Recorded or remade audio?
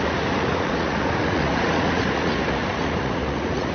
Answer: remade